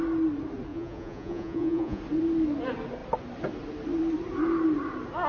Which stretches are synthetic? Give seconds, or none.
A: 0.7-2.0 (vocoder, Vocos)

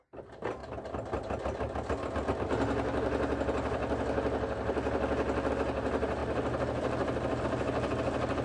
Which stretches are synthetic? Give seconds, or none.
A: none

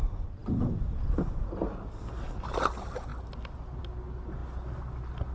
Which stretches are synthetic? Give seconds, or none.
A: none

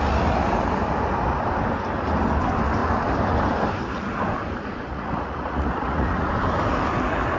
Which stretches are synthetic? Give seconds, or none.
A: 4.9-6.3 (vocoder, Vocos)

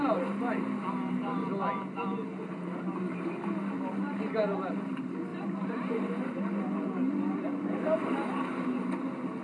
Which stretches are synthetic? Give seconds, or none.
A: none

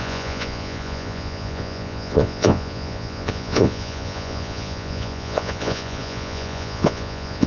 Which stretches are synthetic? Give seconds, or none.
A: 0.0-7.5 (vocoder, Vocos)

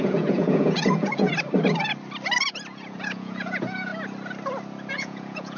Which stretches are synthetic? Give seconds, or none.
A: 0.0-1.3 (vocoder, Vocos); 2.6-3.9; 4.9-5.6

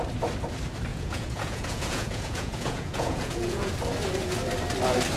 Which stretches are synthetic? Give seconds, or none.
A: 0.9-3.7 (vocoder, Vocos)